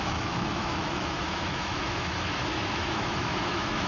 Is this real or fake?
fake